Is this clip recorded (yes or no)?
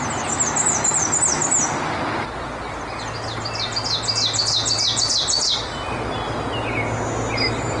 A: yes